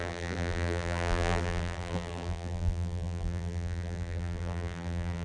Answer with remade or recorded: remade